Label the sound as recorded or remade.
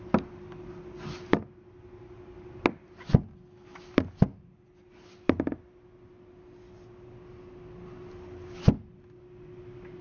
recorded